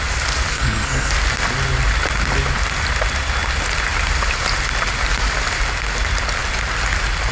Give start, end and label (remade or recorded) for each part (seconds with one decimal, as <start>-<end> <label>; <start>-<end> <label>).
0.0-0.5 recorded; 0.5-1.1 remade; 1.1-7.3 recorded